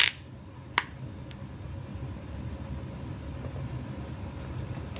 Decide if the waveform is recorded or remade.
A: recorded